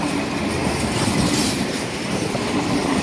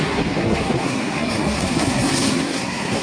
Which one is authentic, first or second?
first